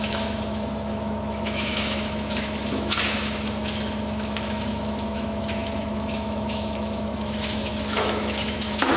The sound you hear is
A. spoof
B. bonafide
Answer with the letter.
A